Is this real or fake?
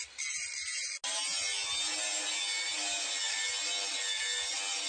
real